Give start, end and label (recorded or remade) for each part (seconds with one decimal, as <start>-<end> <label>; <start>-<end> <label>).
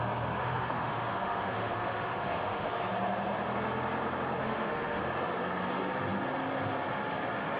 0.0-0.4 recorded; 0.4-2.9 remade; 2.9-4.4 recorded; 4.4-5.0 remade; 5.0-7.6 recorded